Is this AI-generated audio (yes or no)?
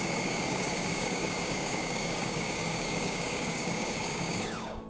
yes